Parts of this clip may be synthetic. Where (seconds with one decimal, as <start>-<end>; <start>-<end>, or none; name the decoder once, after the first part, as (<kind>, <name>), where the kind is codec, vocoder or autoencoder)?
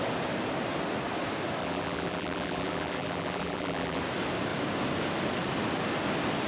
1.6-4.0 (vocoder, BigVGAN v2)